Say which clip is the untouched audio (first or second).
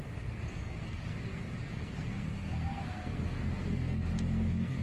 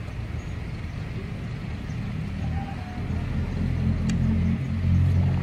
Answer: second